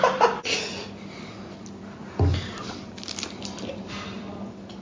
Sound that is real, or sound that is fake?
real